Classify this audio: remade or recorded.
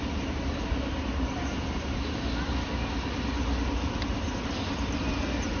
recorded